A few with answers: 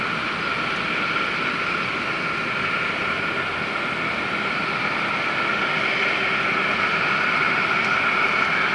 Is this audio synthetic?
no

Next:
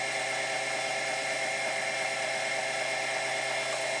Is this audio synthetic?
no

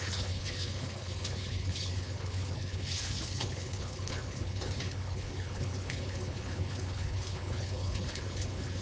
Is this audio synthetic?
yes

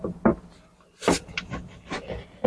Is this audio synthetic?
no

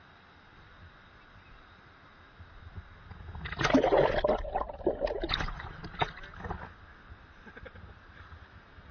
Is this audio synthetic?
no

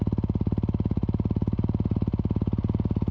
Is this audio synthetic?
no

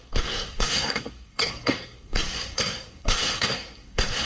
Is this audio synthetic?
yes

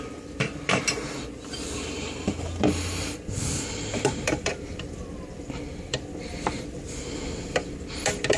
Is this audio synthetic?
yes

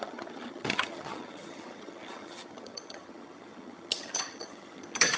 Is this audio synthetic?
yes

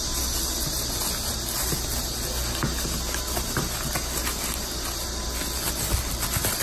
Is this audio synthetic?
no